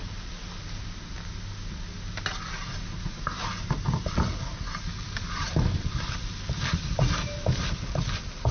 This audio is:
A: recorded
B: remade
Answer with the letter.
A